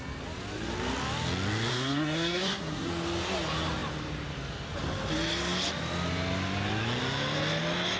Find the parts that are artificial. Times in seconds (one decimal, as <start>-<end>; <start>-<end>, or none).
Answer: 1.7-2.9